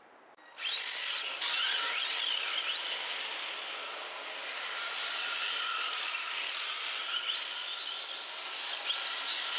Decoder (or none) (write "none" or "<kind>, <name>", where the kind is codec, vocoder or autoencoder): none